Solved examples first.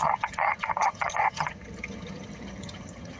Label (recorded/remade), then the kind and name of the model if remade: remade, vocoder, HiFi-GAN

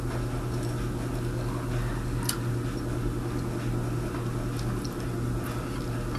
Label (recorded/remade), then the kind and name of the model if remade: recorded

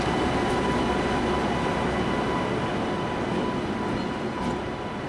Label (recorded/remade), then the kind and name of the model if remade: recorded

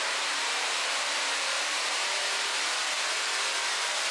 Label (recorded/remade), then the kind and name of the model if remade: remade, vocoder, BigVGAN v2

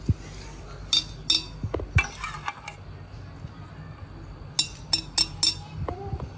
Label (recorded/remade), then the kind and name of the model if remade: recorded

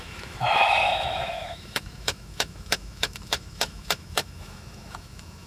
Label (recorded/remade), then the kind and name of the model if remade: remade, autoencoder, DAC-VAE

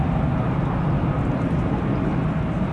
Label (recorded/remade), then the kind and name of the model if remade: recorded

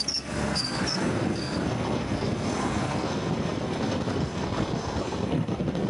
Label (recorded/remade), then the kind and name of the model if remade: remade, codec, SNAC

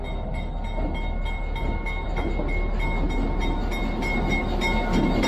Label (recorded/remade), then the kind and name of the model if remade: recorded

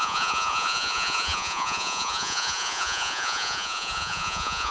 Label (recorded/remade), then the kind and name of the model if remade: remade, vocoder, Vocos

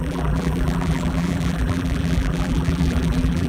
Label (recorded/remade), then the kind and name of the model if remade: remade, vocoder, BigVGAN v2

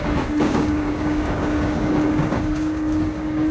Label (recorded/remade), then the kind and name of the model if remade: remade, codec, DAC